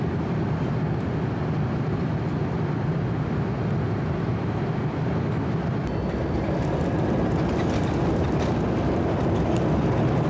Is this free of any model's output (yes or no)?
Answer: yes